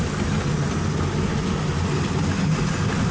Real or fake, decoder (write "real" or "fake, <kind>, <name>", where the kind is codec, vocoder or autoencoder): real